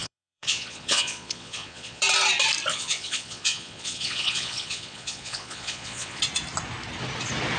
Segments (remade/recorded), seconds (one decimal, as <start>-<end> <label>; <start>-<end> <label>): 0.0-2.0 remade; 2.0-2.7 recorded; 2.7-6.2 remade; 6.2-7.6 recorded